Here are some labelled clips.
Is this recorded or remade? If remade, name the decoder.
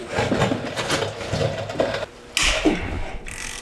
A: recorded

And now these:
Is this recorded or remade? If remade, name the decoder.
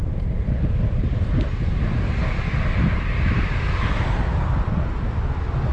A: recorded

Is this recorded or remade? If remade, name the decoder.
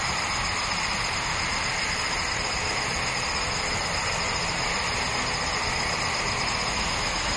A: recorded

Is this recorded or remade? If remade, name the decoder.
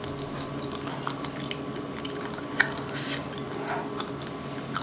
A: recorded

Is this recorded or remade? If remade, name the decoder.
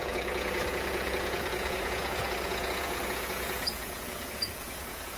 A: remade, vocoder, Vocos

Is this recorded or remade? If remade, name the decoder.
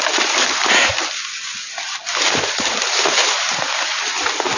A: recorded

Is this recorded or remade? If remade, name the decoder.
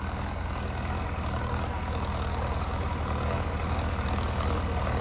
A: remade, codec, DAC